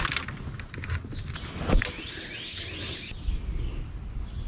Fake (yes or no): no